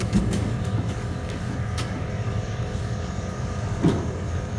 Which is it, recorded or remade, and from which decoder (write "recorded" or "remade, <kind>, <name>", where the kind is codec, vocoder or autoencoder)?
remade, codec, DAC